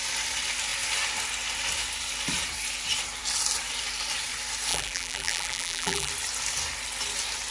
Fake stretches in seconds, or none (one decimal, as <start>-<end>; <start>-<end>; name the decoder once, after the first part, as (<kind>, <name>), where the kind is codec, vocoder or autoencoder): 4.7-6.1 (vocoder, BigVGAN v2)